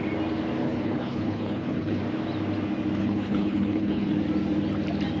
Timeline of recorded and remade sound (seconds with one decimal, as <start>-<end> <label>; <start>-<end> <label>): 0.0-0.6 recorded; 0.6-2.0 remade; 2.0-3.0 recorded; 3.0-4.2 remade; 4.2-5.2 recorded